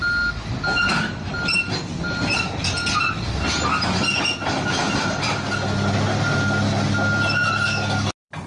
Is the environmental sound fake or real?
real